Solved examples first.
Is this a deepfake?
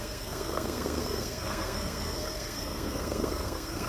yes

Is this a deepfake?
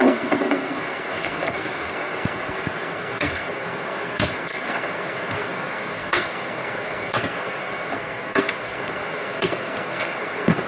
yes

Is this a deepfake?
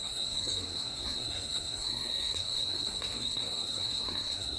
yes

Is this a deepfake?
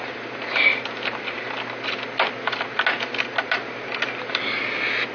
no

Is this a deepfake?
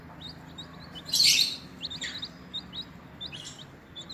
no